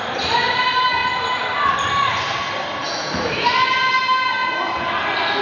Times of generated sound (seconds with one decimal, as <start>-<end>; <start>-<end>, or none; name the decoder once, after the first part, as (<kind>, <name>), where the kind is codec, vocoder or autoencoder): 0.0-2.4 (vocoder, BigVGAN v2); 4.0-4.4